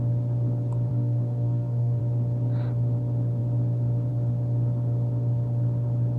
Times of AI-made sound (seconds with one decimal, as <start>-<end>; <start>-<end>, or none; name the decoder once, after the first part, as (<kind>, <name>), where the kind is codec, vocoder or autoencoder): 0.9-2.0 (codec, SNAC)